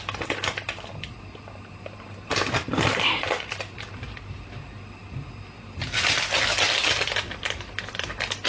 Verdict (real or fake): real